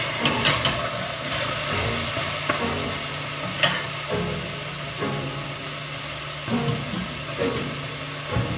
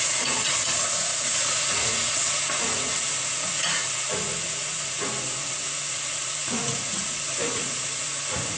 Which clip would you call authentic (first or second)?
first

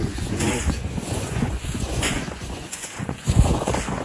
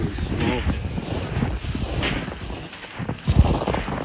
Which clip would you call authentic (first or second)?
second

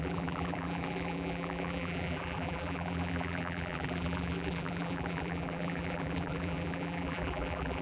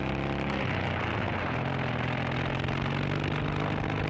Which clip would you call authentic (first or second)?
second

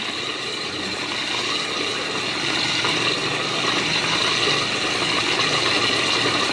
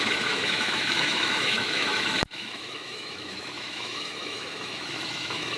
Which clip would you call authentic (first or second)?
first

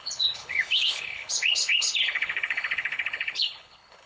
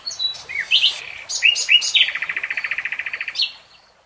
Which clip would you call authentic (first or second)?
second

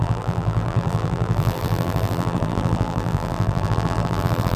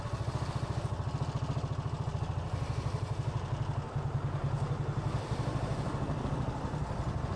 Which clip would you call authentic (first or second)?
second